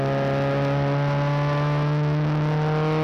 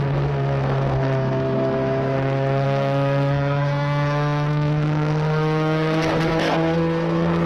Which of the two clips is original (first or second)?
first